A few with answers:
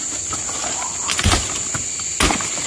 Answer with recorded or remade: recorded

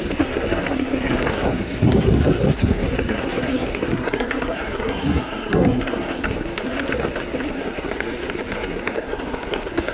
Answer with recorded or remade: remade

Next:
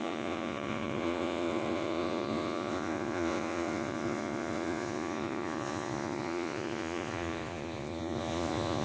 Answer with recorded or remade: remade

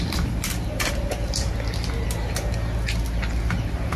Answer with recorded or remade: recorded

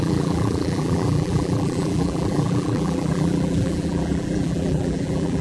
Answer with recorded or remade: remade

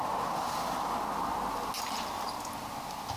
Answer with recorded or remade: recorded